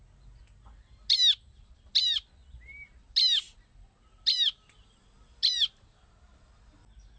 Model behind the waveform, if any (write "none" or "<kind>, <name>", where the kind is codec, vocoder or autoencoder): none